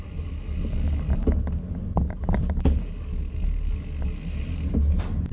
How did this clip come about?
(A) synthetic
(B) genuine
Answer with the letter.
B